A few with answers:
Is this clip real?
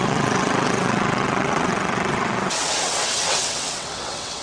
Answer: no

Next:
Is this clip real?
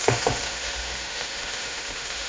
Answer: no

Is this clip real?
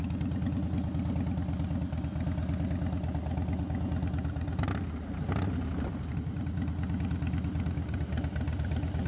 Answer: yes